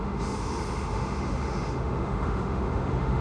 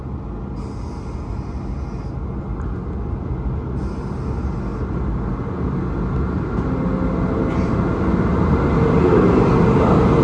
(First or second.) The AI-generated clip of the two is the first